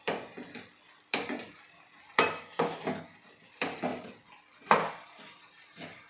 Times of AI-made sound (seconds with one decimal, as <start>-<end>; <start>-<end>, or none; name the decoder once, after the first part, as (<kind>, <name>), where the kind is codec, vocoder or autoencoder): none